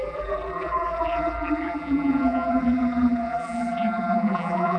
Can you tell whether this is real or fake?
fake